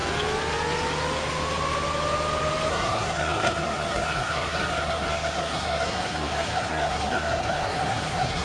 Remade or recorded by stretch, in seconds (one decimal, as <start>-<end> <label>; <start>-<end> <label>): 0.0-2.7 recorded; 2.7-8.4 remade